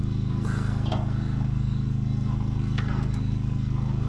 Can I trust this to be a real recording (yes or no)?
no